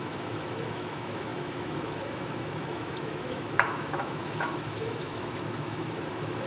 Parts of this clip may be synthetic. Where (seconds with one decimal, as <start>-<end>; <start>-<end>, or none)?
0.0-6.5